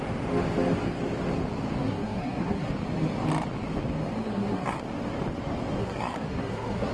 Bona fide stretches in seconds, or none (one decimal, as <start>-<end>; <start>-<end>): 0.0-1.8; 2.7-4.2; 4.8-5.8